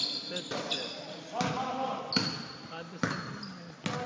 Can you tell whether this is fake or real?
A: real